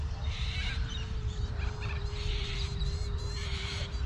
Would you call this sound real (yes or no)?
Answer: no